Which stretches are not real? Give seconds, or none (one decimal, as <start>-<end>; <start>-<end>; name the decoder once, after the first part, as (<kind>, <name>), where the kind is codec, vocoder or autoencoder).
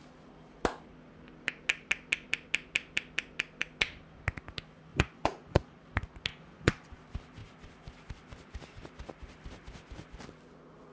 4.9-5.8 (vocoder, Vocos); 6.3-7.0